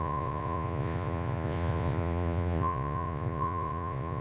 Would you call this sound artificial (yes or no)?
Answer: yes